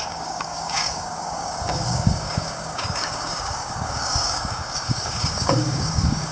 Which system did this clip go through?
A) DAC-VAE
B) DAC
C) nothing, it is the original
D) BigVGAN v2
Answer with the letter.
B